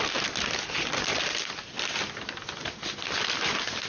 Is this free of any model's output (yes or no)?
yes